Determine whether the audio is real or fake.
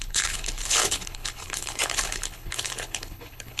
fake